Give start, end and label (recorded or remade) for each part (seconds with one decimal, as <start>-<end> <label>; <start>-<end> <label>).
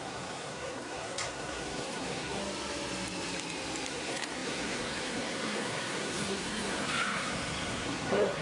0.0-2.4 remade; 2.4-3.9 recorded; 3.9-8.4 remade